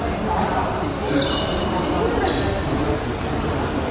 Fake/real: real